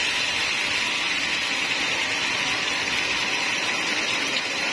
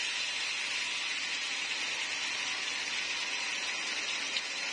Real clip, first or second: second